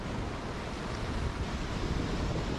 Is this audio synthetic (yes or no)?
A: no